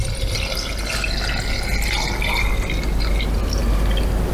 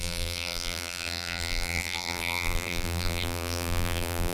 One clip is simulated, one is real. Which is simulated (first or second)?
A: second